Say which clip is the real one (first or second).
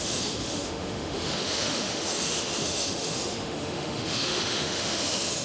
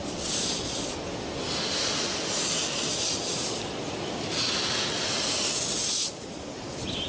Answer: second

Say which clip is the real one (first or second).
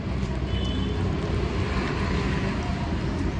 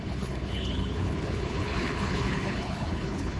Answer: first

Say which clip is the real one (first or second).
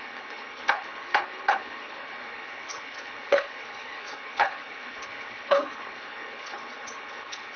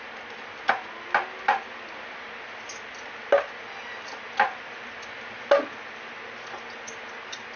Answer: second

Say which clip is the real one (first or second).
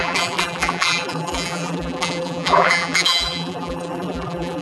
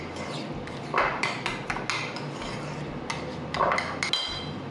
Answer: second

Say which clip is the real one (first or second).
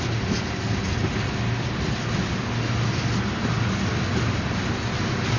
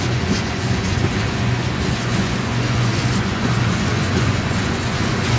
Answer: first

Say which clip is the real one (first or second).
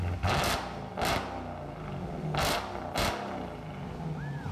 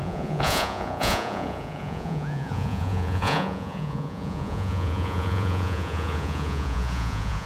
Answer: first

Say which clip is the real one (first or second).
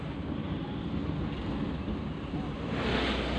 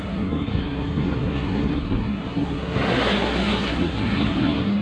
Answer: first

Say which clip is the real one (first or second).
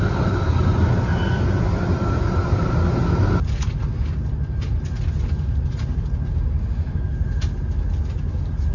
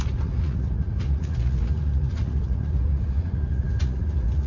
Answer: first